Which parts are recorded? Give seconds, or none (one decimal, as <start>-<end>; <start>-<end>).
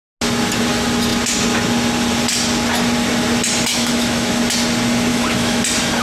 0.0-3.7; 4.4-5.1; 5.6-6.0